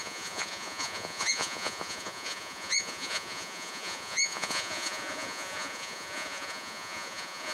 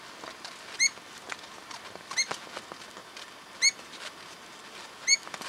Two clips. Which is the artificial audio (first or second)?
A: first